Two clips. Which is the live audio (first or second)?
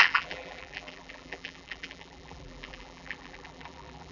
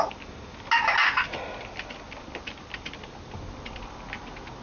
second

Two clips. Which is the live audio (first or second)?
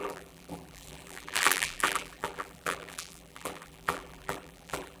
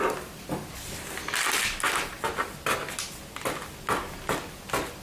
second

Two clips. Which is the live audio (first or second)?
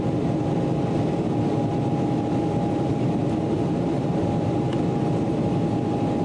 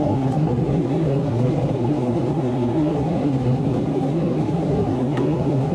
first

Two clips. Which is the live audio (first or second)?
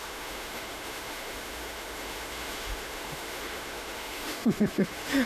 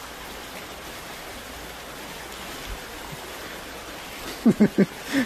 second